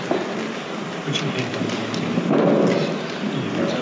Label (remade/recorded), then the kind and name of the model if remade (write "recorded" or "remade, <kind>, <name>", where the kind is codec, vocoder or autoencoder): recorded